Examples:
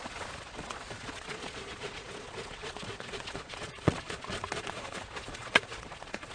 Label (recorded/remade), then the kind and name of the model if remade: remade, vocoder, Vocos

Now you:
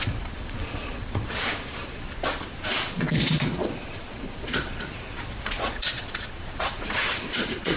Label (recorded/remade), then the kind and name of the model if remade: remade, vocoder, Vocos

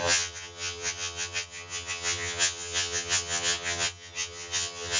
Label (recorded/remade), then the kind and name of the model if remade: remade, vocoder, HiFi-GAN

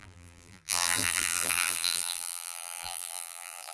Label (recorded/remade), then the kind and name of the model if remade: remade, vocoder, BigVGAN v2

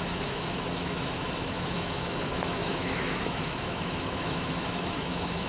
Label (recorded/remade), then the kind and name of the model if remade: remade, autoencoder, DAC-VAE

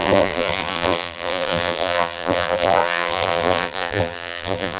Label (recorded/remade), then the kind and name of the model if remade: remade, vocoder, BigVGAN v2